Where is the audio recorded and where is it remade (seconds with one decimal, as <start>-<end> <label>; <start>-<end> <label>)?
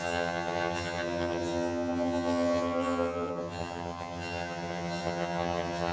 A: 0.0-5.9 remade